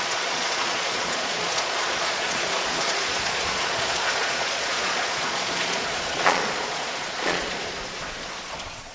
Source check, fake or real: fake